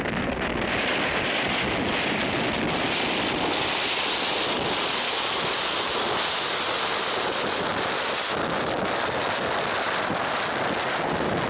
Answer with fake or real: real